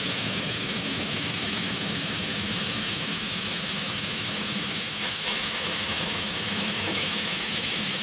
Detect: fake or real fake